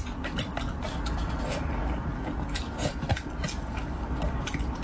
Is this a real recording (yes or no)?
yes